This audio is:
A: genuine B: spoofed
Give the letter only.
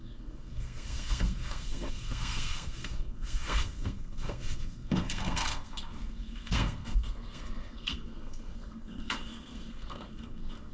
B